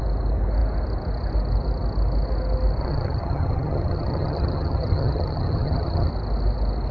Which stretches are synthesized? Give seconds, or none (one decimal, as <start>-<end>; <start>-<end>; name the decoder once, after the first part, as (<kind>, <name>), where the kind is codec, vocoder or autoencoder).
2.8-6.1 (vocoder, HiFi-GAN)